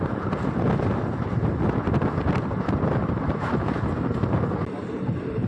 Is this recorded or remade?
recorded